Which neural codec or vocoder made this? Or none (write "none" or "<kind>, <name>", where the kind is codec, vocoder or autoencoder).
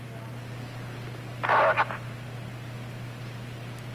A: none